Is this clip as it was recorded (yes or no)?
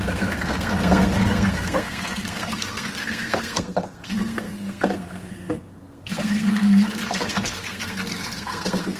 no